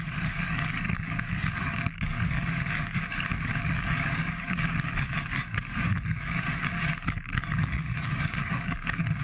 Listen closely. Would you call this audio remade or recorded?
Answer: remade